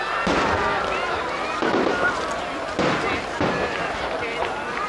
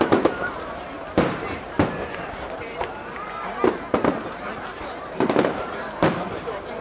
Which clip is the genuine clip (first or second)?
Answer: first